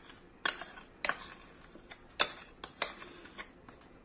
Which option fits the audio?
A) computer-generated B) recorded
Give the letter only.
B